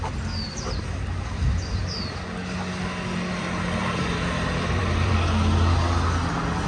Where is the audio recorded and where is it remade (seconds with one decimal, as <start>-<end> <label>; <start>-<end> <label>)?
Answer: 0.0-3.8 recorded; 3.8-5.1 remade; 5.1-6.7 recorded